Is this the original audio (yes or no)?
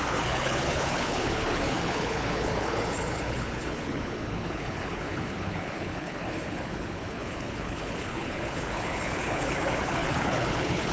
no